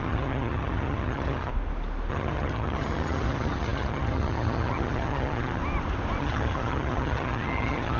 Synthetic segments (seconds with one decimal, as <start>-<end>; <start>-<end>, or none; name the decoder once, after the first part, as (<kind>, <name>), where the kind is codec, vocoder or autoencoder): 0.0-1.5 (vocoder, HiFi-GAN); 2.1-5.6; 6.2-8.0